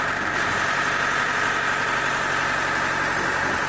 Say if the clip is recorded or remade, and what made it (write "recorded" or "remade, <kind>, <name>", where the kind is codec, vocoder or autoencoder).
recorded